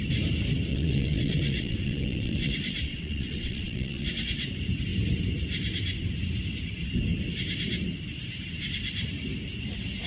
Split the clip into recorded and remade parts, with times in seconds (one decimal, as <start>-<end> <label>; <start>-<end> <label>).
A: 0.0-0.7 recorded; 0.7-4.5 remade; 4.5-10.1 recorded